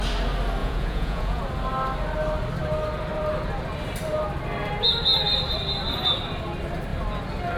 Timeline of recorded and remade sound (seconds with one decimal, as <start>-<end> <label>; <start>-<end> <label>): 0.0-0.6 recorded; 0.6-1.4 remade; 1.4-7.6 recorded

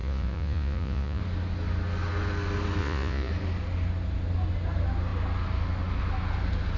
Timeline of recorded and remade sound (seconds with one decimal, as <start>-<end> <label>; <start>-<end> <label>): 0.0-1.2 remade; 1.2-2.8 recorded; 2.8-3.3 remade; 3.3-6.8 recorded

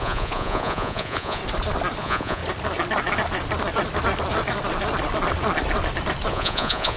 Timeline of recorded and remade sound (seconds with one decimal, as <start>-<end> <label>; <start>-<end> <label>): 0.0-1.4 remade; 1.4-2.0 recorded; 2.0-2.4 remade; 2.4-6.3 recorded; 6.3-7.0 remade

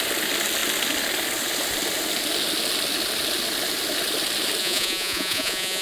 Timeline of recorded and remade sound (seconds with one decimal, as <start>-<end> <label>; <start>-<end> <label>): 0.0-4.6 recorded; 4.6-5.8 remade

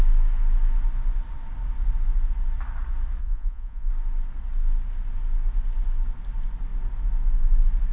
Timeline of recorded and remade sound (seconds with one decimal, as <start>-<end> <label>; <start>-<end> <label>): 0.0-3.2 recorded; 3.2-3.9 remade; 3.9-7.9 recorded